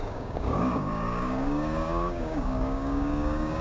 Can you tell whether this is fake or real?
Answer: fake